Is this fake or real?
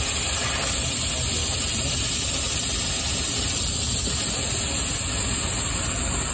real